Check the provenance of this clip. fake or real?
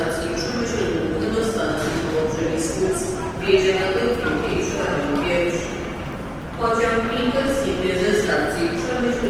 real